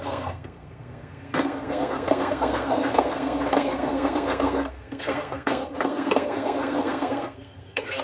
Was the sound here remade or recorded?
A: remade